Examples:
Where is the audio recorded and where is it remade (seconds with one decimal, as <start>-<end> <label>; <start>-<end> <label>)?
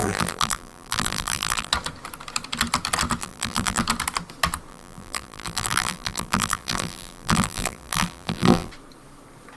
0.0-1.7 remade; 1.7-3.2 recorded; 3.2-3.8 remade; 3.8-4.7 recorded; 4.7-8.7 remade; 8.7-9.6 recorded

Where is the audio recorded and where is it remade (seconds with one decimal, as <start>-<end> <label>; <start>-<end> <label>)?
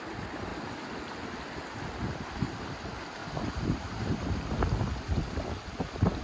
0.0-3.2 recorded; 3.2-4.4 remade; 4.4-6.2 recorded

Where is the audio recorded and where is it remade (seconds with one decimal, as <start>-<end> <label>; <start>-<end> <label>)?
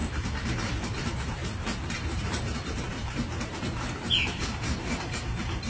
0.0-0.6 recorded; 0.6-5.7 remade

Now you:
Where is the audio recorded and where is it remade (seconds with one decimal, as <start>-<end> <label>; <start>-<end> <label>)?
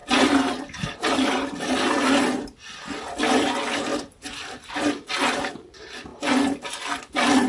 0.0-2.0 remade; 2.0-3.9 recorded; 3.9-4.8 remade; 4.8-7.5 recorded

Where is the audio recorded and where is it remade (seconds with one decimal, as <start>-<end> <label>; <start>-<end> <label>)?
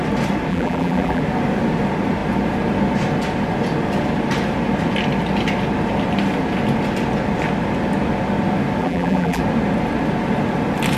0.0-0.5 recorded; 0.5-1.2 remade; 1.2-8.8 recorded; 8.8-9.4 remade; 9.4-11.0 recorded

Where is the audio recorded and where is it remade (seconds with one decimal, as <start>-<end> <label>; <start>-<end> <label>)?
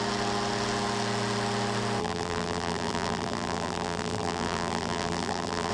0.0-2.0 recorded; 2.0-5.7 remade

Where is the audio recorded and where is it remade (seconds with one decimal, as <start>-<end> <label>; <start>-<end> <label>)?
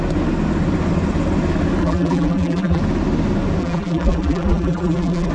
0.0-1.8 recorded; 1.8-2.8 remade; 2.8-3.6 recorded; 3.6-5.3 remade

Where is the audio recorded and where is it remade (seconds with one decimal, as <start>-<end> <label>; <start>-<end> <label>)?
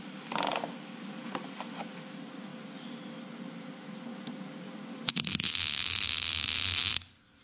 0.0-0.5 recorded; 0.5-1.6 remade; 1.6-2.5 recorded; 2.5-6.9 remade; 6.9-7.4 recorded